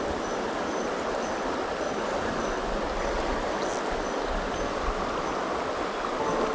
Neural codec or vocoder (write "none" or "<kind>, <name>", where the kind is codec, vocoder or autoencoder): none